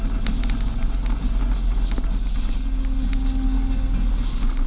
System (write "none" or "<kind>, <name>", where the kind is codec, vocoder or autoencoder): none